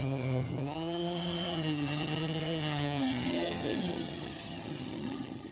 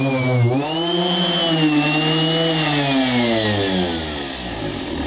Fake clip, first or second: first